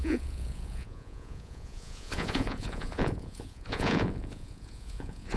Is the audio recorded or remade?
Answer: remade